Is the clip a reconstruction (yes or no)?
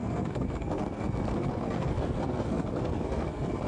yes